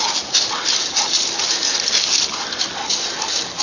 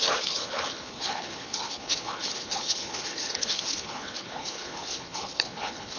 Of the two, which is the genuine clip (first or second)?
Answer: first